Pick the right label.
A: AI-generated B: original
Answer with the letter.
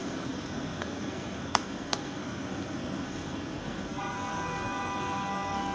A